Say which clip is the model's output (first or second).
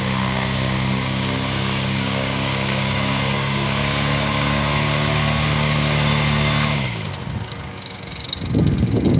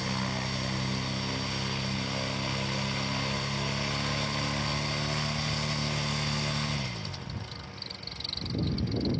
first